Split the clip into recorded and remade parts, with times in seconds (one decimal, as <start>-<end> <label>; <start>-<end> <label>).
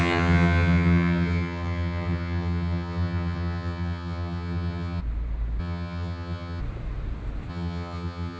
0.0-5.0 remade; 5.0-5.6 recorded; 5.6-6.6 remade; 6.6-7.5 recorded; 7.5-8.4 remade